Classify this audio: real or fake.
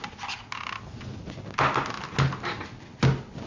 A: real